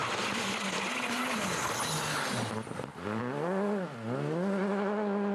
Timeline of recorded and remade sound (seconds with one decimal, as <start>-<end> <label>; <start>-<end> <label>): 0.0-5.3 recorded